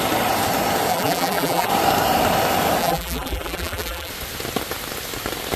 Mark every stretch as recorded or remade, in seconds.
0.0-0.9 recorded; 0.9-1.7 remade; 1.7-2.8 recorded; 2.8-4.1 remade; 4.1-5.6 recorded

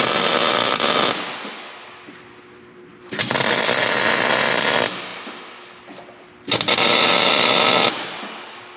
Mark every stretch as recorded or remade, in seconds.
0.0-2.9 recorded; 2.9-3.8 remade; 3.8-8.8 recorded

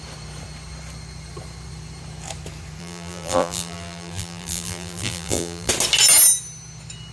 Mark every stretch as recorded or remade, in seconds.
0.0-2.8 recorded; 2.8-5.7 remade; 5.7-7.1 recorded

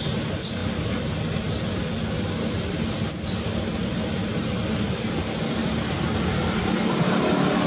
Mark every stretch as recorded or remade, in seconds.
0.0-0.6 recorded; 0.6-3.9 remade; 3.9-5.6 recorded; 5.6-6.8 remade; 6.8-7.7 recorded

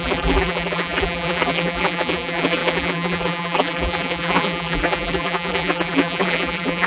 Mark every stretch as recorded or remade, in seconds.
0.0-6.9 remade